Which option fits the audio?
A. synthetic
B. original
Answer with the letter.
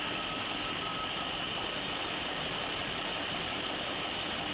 B